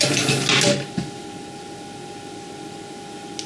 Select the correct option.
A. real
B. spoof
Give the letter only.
A